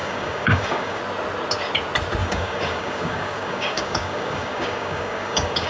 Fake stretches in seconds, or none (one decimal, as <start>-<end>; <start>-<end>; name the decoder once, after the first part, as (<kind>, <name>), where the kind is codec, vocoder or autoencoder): 0.0-1.0 (codec, DAC); 2.2-5.7